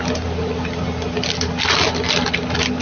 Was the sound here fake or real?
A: real